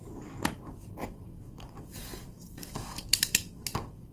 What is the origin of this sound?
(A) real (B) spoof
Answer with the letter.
B